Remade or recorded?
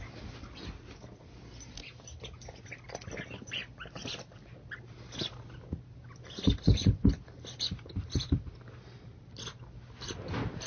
recorded